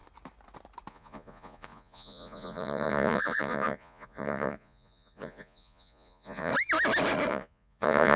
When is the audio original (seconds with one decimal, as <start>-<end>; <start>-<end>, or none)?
0.0-0.9; 6.5-7.3